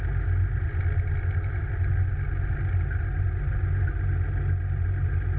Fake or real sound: real